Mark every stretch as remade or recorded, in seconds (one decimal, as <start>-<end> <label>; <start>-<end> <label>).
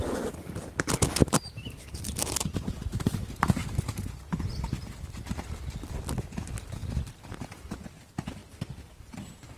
0.0-1.2 recorded; 1.2-4.3 remade; 4.3-9.6 recorded